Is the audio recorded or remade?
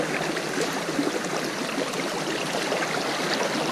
recorded